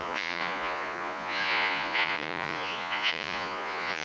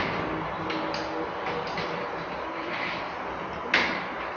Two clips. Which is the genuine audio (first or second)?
second